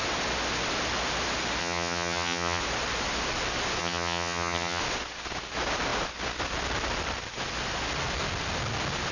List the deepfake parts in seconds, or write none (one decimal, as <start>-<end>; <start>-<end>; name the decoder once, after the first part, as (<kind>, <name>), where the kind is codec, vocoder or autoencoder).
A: 1.6-2.6 (vocoder, HiFi-GAN); 3.8-4.8